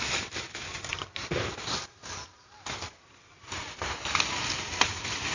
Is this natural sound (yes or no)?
yes